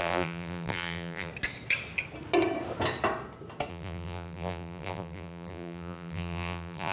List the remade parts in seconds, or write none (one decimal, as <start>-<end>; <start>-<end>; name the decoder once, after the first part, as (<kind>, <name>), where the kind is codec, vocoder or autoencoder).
0.0-1.3 (vocoder, BigVGAN v2); 3.7-6.9